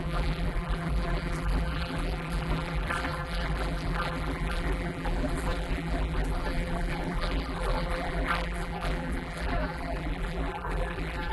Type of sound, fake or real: fake